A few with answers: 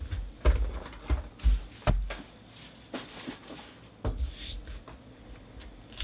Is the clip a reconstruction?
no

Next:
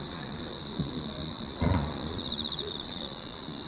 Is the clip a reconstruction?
yes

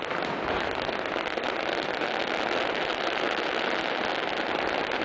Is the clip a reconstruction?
no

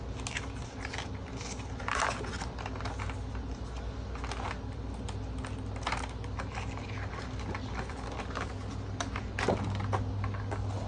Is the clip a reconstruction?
no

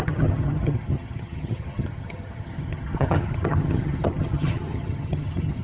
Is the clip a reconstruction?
yes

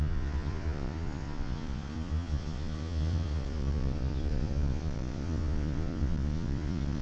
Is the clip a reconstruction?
yes